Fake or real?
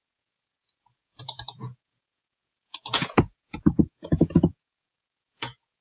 fake